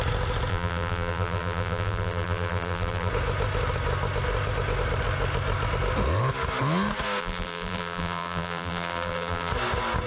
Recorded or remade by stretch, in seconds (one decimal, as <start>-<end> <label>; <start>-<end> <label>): 0.0-0.5 recorded; 0.5-3.1 remade; 3.1-7.2 recorded; 7.2-9.5 remade; 9.5-10.1 recorded